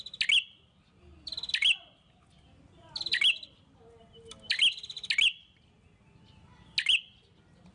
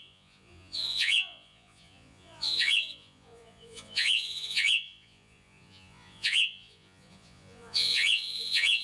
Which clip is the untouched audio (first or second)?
first